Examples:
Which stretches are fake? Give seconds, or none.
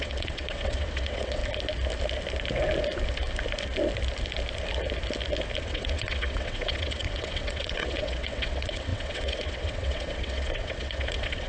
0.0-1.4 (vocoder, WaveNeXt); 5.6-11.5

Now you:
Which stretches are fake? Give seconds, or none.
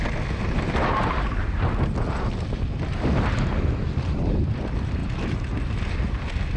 none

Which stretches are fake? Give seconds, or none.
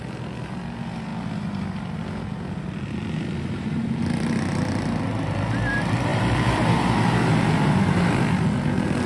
6.1-6.9 (vocoder, BigVGAN v2)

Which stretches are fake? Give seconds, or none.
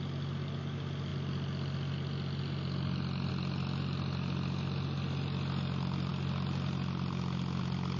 none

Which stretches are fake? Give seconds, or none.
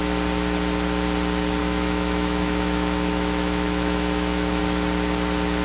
1.6-4.6 (autoencoder, DAC-VAE)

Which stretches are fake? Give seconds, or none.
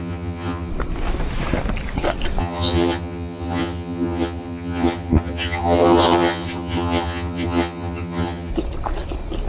0.0-0.7 (vocoder, HiFi-GAN); 2.4-8.5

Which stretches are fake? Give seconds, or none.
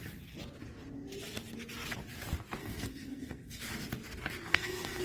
2.6-3.6 (codec, SNAC); 4.5-5.0